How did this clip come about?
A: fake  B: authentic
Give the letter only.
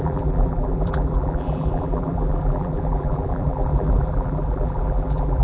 A